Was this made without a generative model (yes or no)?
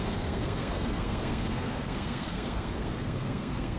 no